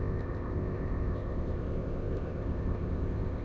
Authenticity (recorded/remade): remade